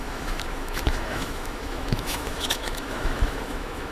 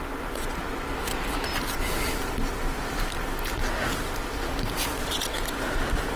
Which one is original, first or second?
second